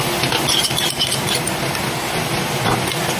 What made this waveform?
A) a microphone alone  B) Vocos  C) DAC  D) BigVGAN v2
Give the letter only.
A